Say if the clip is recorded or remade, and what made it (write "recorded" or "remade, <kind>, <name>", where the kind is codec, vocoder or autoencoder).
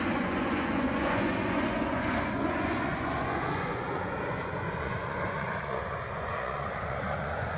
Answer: remade, vocoder, Vocos